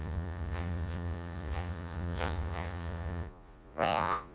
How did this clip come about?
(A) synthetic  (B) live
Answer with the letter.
A